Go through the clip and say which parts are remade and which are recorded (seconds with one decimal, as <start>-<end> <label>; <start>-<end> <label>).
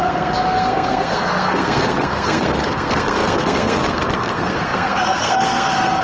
0.0-6.0 remade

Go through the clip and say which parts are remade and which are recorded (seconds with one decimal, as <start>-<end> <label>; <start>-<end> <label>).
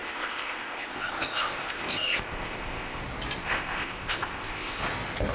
0.0-3.0 remade; 3.0-3.4 recorded; 3.4-4.8 remade; 4.8-5.3 recorded